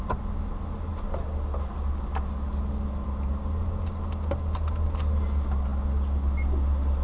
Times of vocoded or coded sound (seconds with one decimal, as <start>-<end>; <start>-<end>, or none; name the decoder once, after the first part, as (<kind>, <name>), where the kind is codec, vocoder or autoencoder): none